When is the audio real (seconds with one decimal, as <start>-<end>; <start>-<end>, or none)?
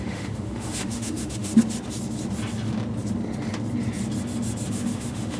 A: 1.5-4.7